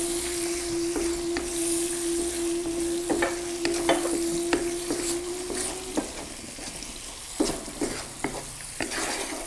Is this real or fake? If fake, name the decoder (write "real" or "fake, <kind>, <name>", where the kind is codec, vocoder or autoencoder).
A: real